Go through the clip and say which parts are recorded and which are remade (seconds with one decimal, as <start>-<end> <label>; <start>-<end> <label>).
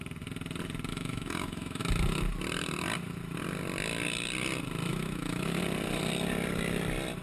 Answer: 0.0-0.9 recorded; 0.9-1.8 remade; 1.8-4.9 recorded; 4.9-5.6 remade; 5.6-7.2 recorded